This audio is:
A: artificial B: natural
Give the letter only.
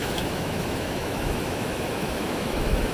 A